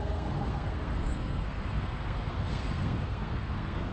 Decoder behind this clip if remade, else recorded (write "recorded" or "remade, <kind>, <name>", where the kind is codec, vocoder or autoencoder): remade, codec, SNAC